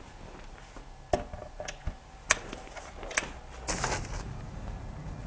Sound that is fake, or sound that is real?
real